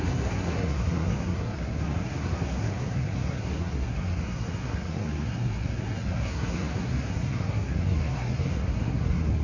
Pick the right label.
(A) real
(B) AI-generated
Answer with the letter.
B